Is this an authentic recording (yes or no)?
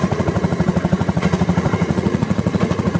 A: no